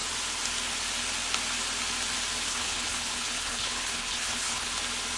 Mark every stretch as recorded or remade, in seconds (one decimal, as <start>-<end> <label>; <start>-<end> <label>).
0.0-2.5 recorded; 2.5-4.7 remade; 4.7-5.2 recorded